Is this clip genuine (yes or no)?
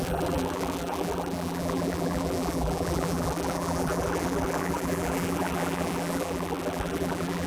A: no